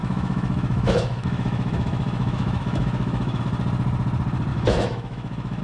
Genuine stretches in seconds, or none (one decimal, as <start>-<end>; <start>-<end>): 3.4-4.5